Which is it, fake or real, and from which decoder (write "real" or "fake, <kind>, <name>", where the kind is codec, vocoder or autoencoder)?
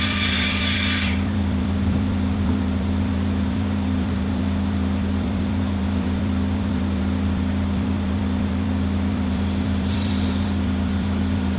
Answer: fake, vocoder, BigVGAN v2